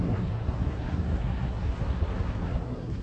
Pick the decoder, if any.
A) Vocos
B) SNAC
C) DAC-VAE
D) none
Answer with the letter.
B